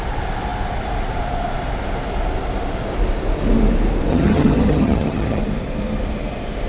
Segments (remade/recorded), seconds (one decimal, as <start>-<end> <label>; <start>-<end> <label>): 0.0-4.1 recorded; 4.1-5.4 remade; 5.4-6.7 recorded